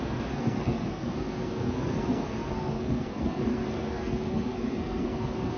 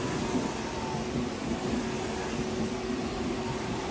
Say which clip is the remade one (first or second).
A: first